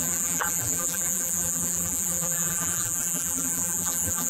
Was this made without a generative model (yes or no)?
no